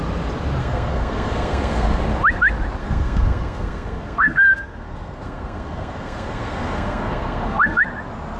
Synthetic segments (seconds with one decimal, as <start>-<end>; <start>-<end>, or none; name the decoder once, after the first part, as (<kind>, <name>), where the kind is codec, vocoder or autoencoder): 0.6-2.0 (codec, SNAC); 2.8-7.8